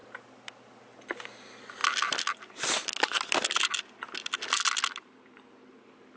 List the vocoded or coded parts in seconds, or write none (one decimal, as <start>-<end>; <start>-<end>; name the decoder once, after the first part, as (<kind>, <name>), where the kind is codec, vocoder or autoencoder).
none